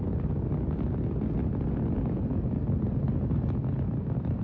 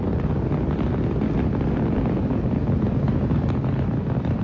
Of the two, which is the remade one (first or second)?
second